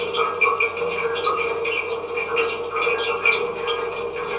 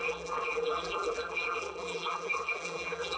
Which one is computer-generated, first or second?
second